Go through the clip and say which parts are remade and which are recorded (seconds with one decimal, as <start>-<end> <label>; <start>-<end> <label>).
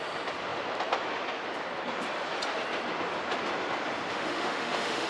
0.0-4.1 recorded; 4.1-5.1 remade